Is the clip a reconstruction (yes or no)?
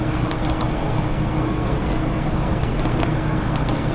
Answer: yes